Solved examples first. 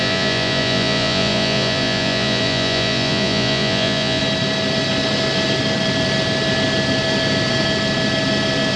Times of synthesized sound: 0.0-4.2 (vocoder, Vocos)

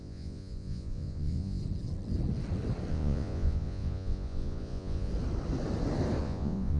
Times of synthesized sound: 0.0-1.6 (vocoder, Vocos); 2.9-5.1; 6.2-6.8

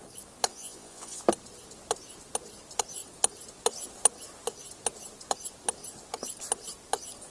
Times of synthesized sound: 0.5-1.2 (vocoder, Vocos)

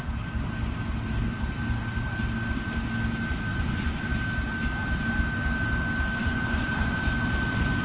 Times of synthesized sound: 3.5-4.1 (vocoder, Vocos); 6.2-7.0

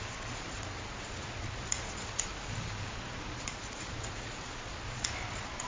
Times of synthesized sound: 0.0-2.3 (vocoder, Vocos); 2.9-5.7

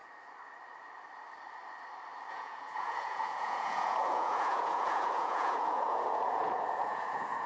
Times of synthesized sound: 2.3-7.5 (vocoder, Vocos)

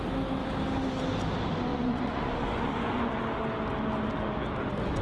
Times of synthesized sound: 1.7-3.2 (vocoder, Vocos)

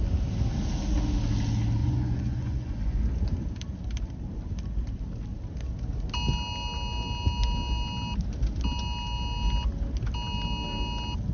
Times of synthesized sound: 1.8-3.0 (vocoder, Vocos)